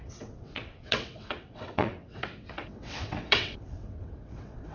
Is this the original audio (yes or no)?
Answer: no